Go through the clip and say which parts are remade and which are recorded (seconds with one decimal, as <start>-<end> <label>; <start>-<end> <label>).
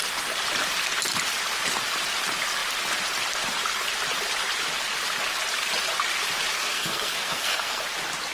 0.0-6.6 recorded; 6.6-7.8 remade; 7.8-8.3 recorded